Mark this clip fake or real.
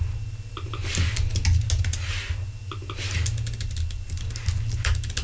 real